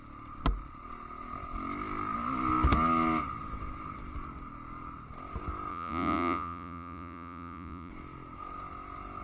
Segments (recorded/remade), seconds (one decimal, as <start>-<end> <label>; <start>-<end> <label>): 0.0-5.7 recorded; 5.7-7.9 remade; 7.9-9.2 recorded